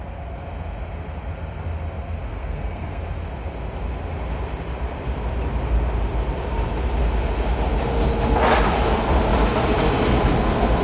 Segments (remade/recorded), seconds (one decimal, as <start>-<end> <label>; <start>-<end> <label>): 0.0-2.3 recorded; 2.3-3.0 remade; 3.0-10.8 recorded